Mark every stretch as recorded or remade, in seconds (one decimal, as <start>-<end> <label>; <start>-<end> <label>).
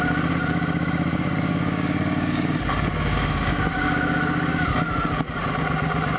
0.0-1.1 recorded; 1.1-4.8 remade; 4.8-6.2 recorded